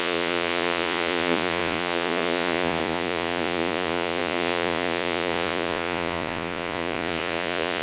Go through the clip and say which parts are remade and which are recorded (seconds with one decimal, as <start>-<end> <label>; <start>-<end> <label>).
0.0-7.8 remade